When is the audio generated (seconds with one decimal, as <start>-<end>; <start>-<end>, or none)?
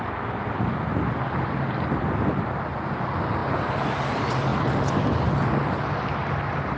none